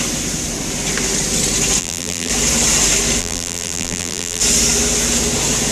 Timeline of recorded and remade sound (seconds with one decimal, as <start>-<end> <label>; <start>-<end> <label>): 0.0-1.8 recorded; 1.8-2.3 remade; 2.3-3.2 recorded; 3.2-4.4 remade; 4.4-5.7 recorded